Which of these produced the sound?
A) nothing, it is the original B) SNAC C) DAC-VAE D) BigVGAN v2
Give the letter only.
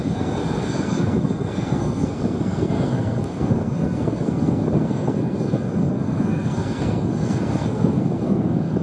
B